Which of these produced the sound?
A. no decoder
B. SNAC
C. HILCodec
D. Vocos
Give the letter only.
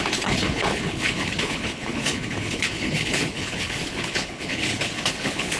C